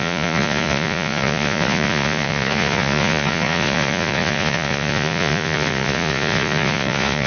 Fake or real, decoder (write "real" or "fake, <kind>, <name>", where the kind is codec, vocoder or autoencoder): fake, vocoder, Vocos